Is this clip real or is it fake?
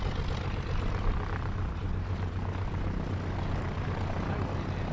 real